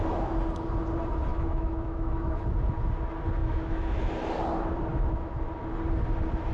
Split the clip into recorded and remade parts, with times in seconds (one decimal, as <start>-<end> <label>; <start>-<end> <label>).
0.0-1.3 recorded; 1.3-2.4 remade; 2.4-3.4 recorded; 3.4-4.0 remade; 4.0-4.9 recorded; 4.9-5.5 remade; 5.5-6.5 recorded